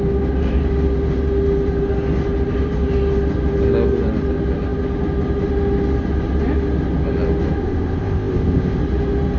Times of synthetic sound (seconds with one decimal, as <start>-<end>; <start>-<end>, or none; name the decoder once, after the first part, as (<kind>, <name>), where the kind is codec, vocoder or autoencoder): 7.6-8.8 (codec, ZipCodec)

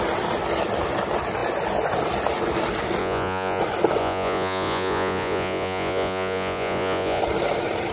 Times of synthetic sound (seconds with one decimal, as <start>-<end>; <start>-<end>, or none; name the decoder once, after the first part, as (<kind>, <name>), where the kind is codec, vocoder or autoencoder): 3.0-3.6 (vocoder, Vocos); 4.0-7.2